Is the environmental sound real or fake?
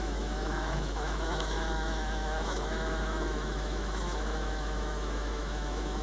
fake